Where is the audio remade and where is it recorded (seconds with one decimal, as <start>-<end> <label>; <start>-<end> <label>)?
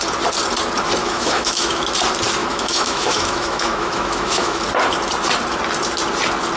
0.0-1.0 recorded; 1.0-1.8 remade; 1.8-2.4 recorded; 2.4-4.6 remade; 4.6-6.6 recorded